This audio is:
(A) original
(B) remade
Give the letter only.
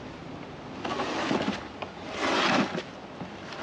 A